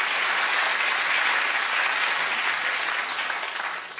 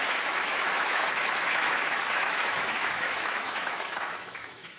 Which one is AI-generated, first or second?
second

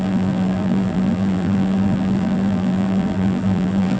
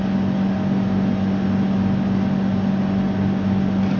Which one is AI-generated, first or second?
first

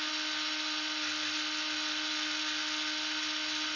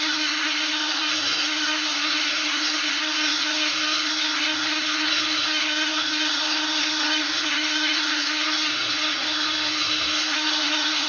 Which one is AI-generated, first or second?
second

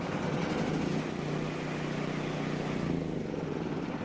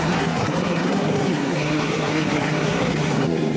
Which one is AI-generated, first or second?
second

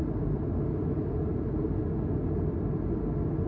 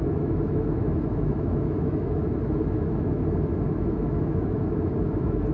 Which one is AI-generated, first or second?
second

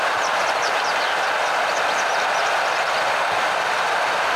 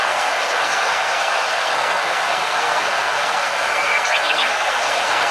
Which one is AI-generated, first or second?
second